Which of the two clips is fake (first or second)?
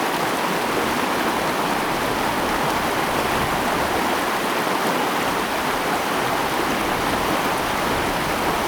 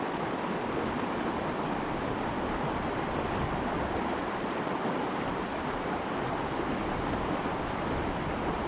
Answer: second